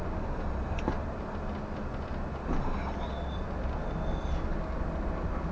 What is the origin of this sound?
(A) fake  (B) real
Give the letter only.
B